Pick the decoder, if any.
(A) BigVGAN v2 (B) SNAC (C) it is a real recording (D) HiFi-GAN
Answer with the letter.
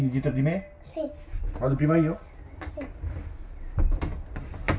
C